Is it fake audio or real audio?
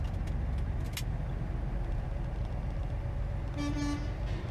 real